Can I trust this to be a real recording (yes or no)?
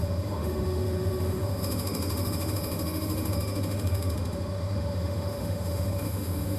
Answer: no